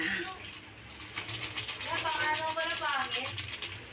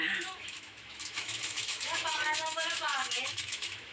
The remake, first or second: second